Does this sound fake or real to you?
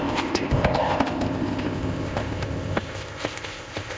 fake